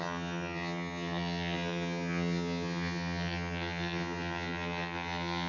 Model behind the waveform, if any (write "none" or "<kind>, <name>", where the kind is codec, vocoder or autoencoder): vocoder, HiFi-GAN